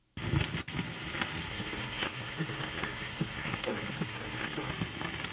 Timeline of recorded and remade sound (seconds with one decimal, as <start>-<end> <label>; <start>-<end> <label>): 0.0-1.5 recorded; 1.5-4.7 remade; 4.7-5.3 recorded